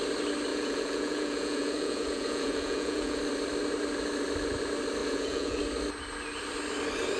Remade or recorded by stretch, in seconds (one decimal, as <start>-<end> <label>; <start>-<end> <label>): 0.0-0.5 recorded; 0.5-3.2 remade; 3.2-5.0 recorded; 5.0-5.6 remade; 5.6-7.2 recorded